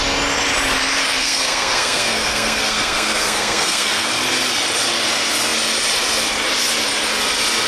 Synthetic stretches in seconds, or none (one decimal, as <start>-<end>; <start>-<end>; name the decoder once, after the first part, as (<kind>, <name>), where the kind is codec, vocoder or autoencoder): 1.2-4.1 (codec, SNAC)